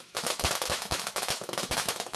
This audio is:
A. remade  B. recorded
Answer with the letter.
A